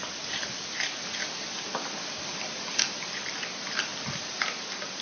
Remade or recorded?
recorded